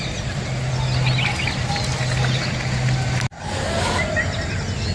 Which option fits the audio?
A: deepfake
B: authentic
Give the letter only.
B